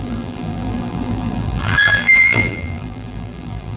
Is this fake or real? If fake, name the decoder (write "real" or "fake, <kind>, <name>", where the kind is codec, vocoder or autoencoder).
fake, vocoder, BigVGAN v2